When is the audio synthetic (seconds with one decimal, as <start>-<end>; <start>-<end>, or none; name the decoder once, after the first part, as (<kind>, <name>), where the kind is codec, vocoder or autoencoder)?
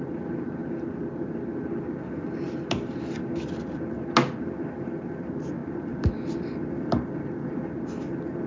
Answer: none